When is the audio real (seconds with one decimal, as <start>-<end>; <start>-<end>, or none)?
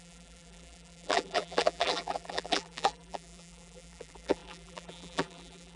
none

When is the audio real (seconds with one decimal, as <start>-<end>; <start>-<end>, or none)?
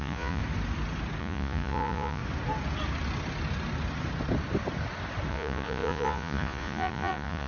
0.4-1.2; 2.2-5.3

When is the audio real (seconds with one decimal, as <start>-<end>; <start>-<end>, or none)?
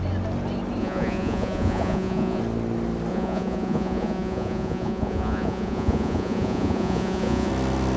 0.0-0.8; 2.4-3.1; 7.5-8.0